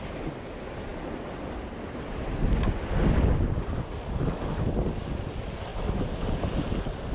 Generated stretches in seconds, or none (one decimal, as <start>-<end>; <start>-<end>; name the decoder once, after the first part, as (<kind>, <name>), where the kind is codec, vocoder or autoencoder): none